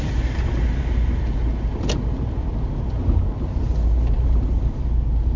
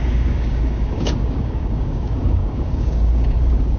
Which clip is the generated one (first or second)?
second